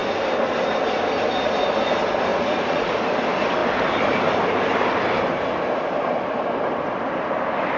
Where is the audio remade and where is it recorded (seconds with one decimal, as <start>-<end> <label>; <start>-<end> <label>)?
0.0-2.3 recorded; 2.3-3.0 remade; 3.0-7.8 recorded